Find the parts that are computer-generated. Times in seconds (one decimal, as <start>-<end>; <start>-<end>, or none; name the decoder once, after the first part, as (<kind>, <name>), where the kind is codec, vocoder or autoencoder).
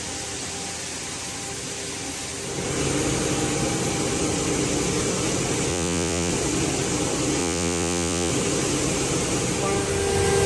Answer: 5.7-6.3 (vocoder, Vocos); 7.4-8.3